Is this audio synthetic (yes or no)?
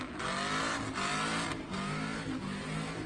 no